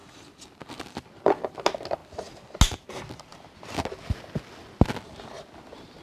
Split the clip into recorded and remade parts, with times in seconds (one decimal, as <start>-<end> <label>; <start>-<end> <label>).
0.0-6.0 recorded